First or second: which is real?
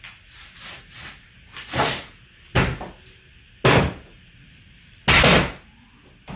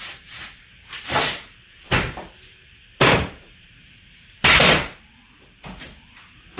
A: first